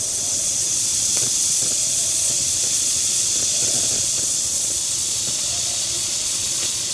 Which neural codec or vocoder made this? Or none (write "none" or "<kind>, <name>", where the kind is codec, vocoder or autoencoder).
vocoder, Vocos